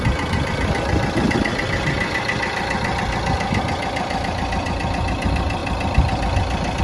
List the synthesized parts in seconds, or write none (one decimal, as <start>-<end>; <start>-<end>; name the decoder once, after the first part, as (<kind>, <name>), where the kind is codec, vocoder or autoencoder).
none